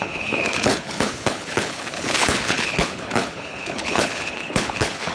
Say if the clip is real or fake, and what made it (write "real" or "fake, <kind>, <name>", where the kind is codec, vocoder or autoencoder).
fake, codec, HILCodec